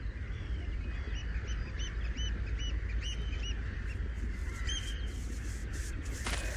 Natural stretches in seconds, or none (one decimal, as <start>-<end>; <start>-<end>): 0.0-4.4; 4.9-5.6